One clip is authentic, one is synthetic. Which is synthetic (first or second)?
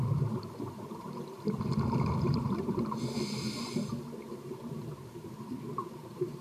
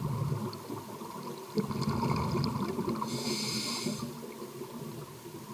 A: first